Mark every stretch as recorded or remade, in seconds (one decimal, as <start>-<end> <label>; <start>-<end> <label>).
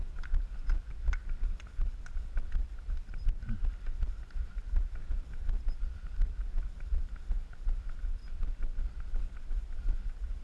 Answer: 0.0-10.4 recorded